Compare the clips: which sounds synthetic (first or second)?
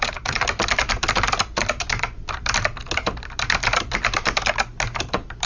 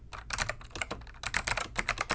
first